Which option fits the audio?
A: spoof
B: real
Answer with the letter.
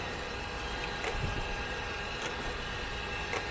B